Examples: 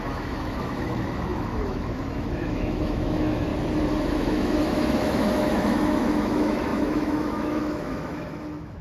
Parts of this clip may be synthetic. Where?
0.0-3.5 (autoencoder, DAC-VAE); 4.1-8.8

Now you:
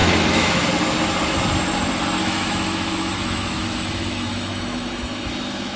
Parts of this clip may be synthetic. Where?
0.0-0.7 (autoencoder, DAC-VAE); 2.2-5.8

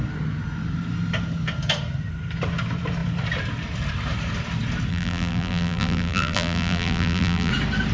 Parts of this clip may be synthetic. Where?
4.9-7.5 (vocoder, BigVGAN v2)

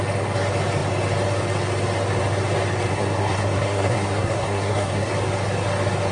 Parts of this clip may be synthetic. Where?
2.9-5.1 (codec, SNAC)

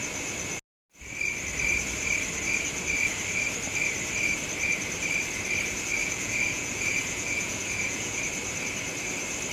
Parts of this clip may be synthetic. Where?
6.0-8.2 (vocoder, Vocos)